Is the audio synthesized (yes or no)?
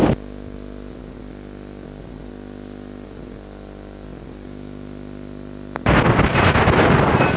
no